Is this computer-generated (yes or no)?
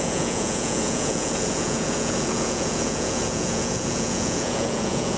yes